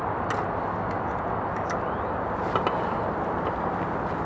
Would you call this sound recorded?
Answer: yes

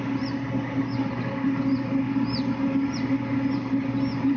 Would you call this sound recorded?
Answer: yes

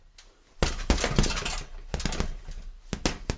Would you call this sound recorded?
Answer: yes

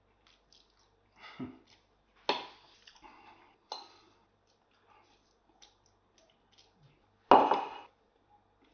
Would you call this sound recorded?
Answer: yes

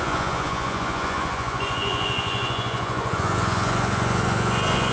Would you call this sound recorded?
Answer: no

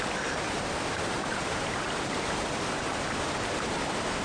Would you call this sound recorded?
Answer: yes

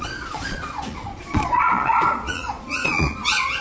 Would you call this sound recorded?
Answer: no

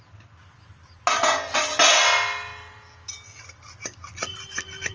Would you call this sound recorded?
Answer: yes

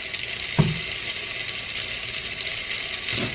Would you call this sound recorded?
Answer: yes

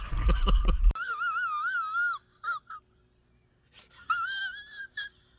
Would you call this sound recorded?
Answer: yes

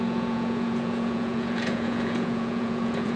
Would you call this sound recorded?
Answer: no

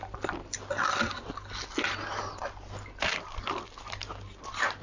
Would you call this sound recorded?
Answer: yes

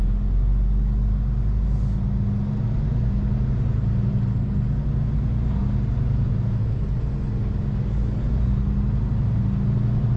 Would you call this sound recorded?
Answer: yes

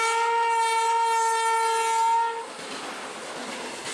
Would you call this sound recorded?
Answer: yes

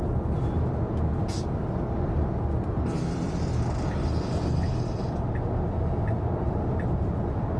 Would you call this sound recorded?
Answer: yes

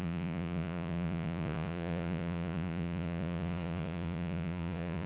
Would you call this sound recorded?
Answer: no